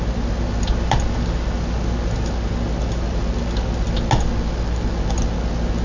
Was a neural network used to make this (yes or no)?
no